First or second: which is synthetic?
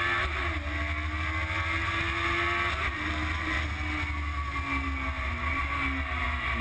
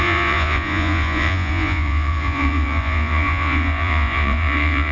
second